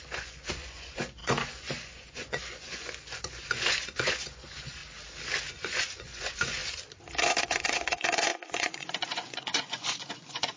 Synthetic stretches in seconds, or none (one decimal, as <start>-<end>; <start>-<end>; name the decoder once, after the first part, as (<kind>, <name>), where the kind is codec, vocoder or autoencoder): 0.0-4.8 (vocoder, Vocos); 5.5-6.6; 7.4-10.6